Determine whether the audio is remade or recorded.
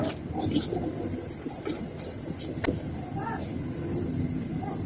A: recorded